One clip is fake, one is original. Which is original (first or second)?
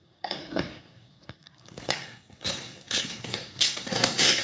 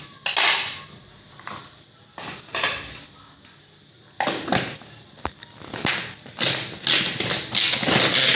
second